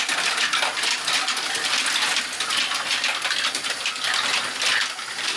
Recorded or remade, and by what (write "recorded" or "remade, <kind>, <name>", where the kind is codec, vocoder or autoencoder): recorded